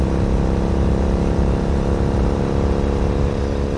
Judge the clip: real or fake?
real